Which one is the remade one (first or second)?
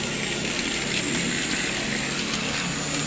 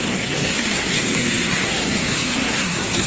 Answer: second